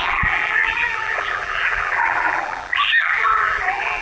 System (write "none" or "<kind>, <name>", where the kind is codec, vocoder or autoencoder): vocoder, BigVGAN v2